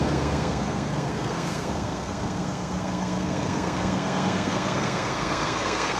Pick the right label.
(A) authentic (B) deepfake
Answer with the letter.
B